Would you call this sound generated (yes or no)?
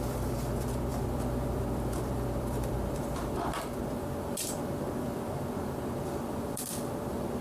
yes